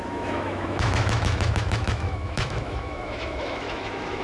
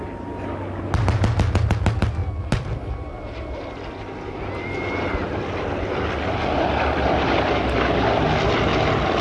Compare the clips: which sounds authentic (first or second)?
second